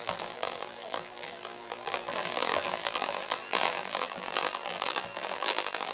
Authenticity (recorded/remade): remade